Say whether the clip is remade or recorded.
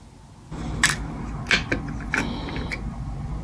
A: recorded